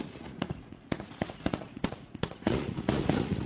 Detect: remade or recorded remade